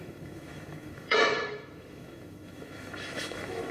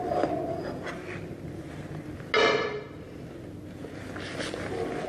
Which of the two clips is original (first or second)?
second